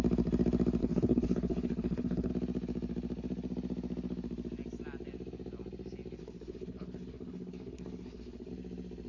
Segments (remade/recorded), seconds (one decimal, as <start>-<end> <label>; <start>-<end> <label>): 0.0-0.8 recorded; 0.8-2.3 remade; 2.3-6.2 recorded; 6.2-8.5 remade; 8.5-9.1 recorded